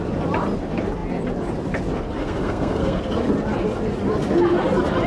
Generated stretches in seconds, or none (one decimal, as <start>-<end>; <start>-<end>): 2.2-3.0